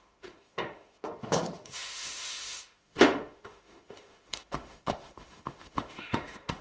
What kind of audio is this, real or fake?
fake